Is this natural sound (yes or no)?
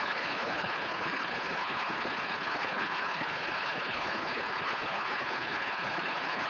no